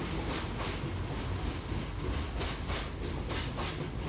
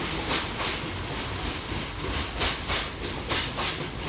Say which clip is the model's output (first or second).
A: second